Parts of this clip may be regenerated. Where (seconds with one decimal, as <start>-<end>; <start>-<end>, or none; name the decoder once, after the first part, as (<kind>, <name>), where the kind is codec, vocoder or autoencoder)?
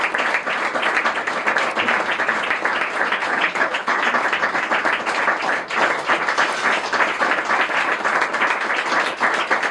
3.2-4.0 (codec, HILCodec)